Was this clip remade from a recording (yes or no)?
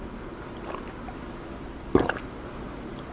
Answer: no